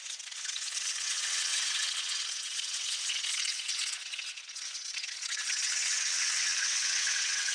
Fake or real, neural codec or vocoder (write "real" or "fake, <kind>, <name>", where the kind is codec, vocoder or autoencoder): fake, vocoder, WaveNeXt